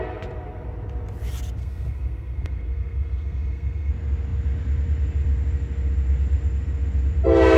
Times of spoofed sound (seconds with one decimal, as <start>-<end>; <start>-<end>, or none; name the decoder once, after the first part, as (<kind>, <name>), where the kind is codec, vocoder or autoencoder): 1.6-3.9 (codec, SNAC)